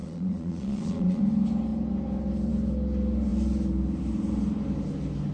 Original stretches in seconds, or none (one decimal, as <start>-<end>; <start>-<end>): 1.2-5.3